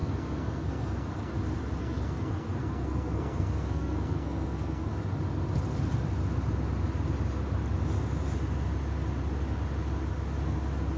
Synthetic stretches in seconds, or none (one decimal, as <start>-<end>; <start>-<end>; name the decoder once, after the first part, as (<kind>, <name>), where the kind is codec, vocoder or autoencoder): 0.0-1.3 (codec, SNAC); 1.8-4.9